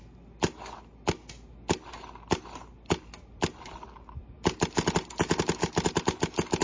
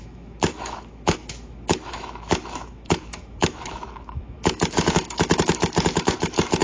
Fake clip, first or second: second